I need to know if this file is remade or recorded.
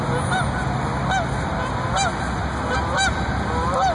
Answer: recorded